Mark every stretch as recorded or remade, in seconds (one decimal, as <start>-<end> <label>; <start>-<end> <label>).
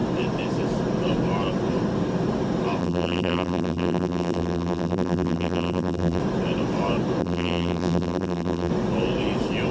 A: 0.0-2.8 recorded; 2.8-6.2 remade; 6.2-7.2 recorded; 7.2-8.7 remade; 8.7-9.7 recorded